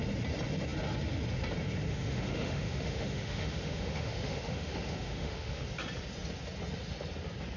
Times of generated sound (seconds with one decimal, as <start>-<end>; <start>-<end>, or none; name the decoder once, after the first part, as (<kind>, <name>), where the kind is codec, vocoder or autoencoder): 1.9-5.6 (autoencoder, DAC-VAE)